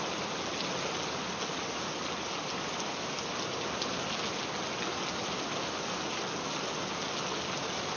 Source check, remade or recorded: recorded